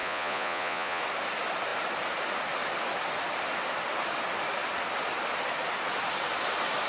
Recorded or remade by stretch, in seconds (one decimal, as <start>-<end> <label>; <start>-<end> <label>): 0.0-1.0 remade; 1.0-6.9 recorded